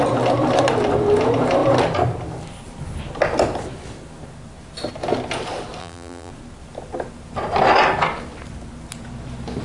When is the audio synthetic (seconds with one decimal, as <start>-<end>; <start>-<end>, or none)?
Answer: 5.8-6.3